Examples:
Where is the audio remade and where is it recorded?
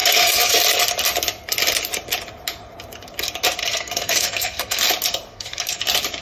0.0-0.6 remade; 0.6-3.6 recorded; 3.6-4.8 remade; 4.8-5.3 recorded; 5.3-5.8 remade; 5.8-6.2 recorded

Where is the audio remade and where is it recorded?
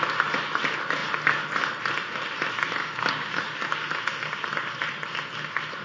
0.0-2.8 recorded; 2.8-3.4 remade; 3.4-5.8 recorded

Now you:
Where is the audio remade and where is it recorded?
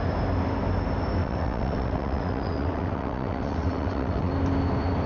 0.0-1.2 recorded; 1.2-4.3 remade; 4.3-5.1 recorded